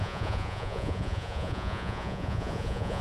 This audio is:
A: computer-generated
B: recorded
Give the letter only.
A